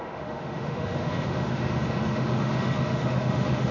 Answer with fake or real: fake